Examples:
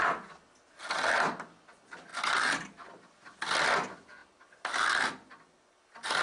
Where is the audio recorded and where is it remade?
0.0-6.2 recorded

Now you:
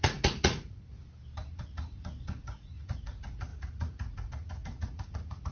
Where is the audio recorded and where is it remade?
0.0-1.0 remade; 1.0-1.5 recorded; 1.5-5.5 remade

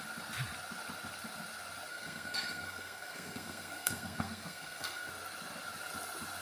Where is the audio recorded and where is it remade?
0.0-1.9 recorded; 1.9-5.1 remade; 5.1-6.4 recorded

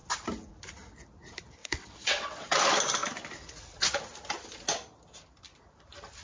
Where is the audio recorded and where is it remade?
0.0-1.6 recorded; 1.6-2.6 remade; 2.6-6.2 recorded

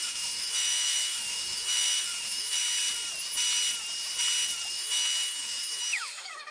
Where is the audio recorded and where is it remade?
0.0-2.6 remade; 2.6-4.7 recorded; 4.7-6.5 remade

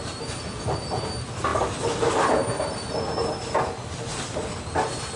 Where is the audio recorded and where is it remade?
0.0-5.2 recorded